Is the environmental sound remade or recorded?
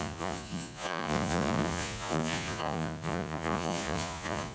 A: remade